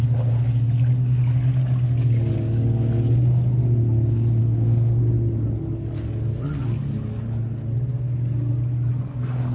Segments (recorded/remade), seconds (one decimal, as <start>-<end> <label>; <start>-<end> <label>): 0.0-4.4 recorded; 4.4-5.0 remade; 5.0-9.5 recorded